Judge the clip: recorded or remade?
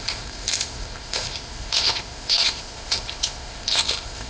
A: remade